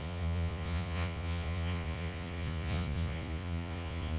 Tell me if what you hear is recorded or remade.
remade